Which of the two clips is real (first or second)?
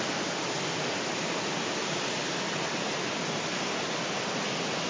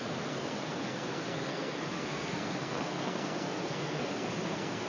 first